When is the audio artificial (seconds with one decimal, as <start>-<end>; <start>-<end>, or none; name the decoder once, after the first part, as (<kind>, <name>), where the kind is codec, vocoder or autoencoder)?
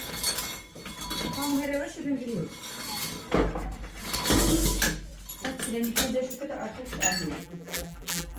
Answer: 7.4-8.4 (vocoder, BigVGAN v2)